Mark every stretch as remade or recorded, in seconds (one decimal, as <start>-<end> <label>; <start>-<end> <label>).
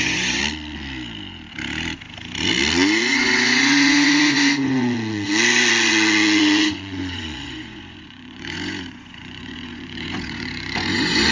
0.0-0.4 remade; 0.4-3.0 recorded; 3.0-11.3 remade